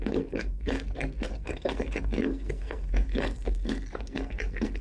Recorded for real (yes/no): no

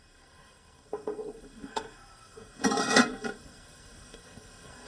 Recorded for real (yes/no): no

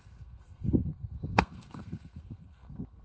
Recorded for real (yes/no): no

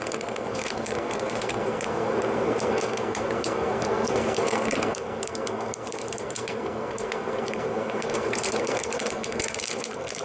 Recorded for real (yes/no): no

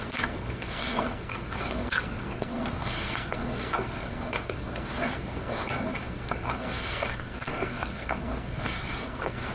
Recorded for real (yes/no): no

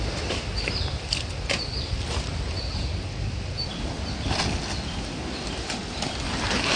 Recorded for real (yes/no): yes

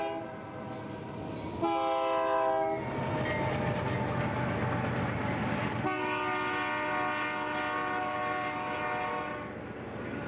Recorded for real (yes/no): yes